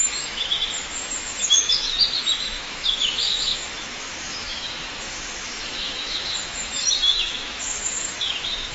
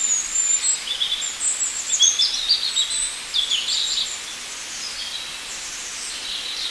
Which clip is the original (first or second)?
second